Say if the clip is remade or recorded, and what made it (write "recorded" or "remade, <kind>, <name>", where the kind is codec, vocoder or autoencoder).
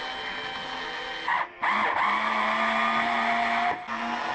recorded